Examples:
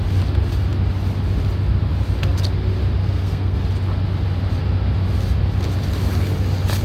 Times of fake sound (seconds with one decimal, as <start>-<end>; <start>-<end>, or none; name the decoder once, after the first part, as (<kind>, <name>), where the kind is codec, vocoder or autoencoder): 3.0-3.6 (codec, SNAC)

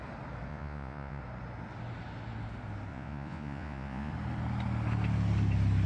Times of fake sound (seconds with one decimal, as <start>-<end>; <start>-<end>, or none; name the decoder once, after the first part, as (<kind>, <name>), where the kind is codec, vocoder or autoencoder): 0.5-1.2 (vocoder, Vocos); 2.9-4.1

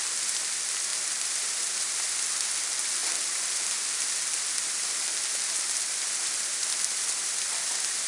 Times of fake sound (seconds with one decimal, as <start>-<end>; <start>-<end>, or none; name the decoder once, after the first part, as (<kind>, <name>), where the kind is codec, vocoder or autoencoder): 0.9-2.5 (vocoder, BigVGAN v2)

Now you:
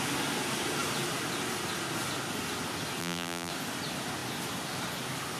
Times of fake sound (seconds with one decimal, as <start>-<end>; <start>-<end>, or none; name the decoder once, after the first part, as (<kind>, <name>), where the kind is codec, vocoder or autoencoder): 3.0-3.5 (vocoder, BigVGAN v2)

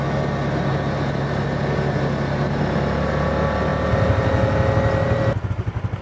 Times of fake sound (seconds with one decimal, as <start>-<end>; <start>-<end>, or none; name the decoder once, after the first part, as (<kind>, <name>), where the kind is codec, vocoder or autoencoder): none

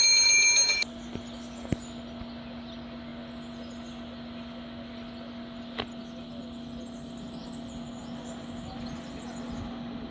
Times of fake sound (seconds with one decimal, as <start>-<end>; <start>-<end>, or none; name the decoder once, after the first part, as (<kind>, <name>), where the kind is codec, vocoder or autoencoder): none

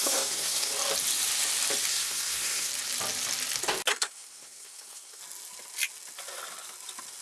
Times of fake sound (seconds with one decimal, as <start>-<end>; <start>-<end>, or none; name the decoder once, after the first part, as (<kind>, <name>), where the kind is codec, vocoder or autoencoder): 0.0-0.7 (codec, SNAC); 1.9-2.7; 3.9-5.2

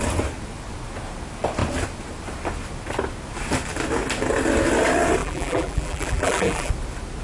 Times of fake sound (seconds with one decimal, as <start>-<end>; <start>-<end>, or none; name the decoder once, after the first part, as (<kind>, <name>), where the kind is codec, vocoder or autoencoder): 5.2-6.7 (vocoder, BigVGAN v2)